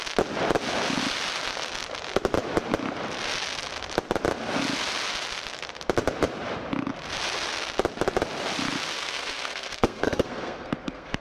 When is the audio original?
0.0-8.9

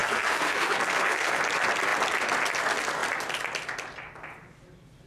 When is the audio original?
1.4-5.1

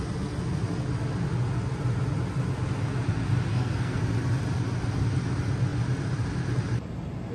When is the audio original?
0.0-3.5; 4.0-7.3